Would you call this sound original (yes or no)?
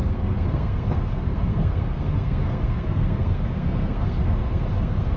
no